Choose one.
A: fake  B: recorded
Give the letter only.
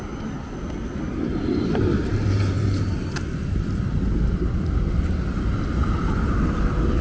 B